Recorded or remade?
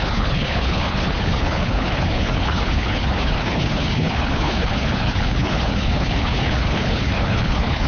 remade